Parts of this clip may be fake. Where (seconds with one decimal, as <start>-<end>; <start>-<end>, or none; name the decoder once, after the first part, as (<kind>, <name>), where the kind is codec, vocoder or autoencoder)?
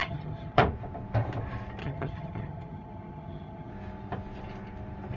0.0-0.6 (vocoder, HiFi-GAN); 1.8-3.7